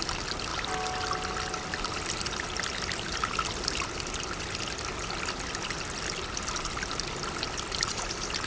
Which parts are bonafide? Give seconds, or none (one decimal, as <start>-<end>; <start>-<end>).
0.0-8.5